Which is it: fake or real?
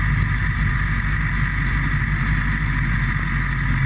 real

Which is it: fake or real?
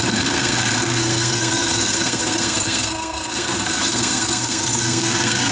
fake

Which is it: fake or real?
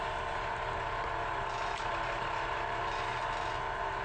real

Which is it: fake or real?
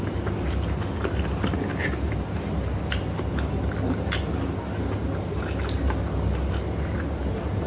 real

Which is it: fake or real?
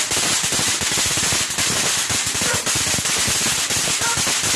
real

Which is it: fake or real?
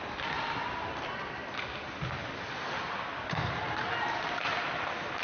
real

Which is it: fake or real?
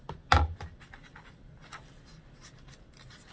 real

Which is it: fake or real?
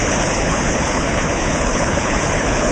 fake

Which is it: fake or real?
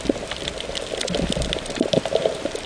real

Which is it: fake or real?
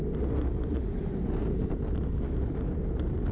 real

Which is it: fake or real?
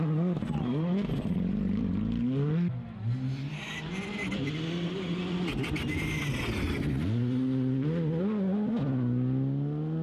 real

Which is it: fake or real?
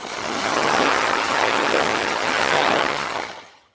fake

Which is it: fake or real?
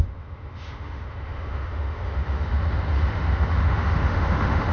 fake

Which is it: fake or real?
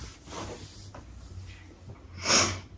real